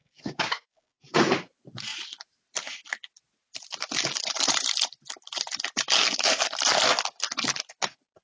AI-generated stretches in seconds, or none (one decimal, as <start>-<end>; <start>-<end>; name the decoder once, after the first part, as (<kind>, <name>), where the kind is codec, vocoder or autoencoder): 0.0-1.2 (codec, DAC)